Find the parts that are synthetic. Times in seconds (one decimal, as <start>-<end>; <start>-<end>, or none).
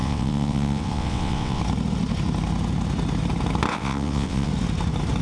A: 0.0-1.6; 3.7-4.5